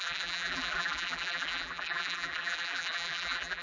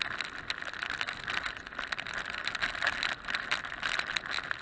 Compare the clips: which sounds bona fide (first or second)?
second